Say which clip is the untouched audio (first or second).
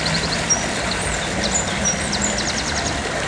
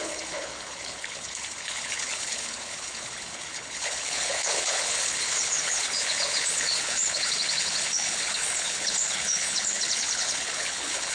first